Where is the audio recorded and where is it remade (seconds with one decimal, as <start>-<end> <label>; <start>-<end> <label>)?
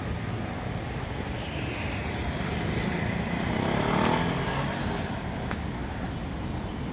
0.0-6.9 recorded